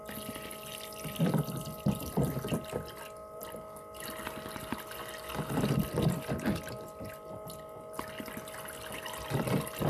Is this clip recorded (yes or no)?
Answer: no